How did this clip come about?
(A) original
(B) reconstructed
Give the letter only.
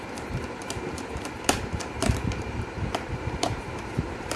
B